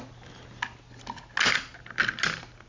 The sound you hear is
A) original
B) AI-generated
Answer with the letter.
A